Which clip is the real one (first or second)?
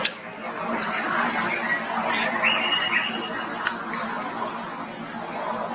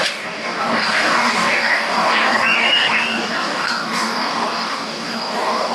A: first